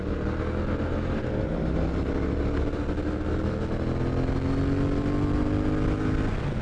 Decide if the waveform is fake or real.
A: real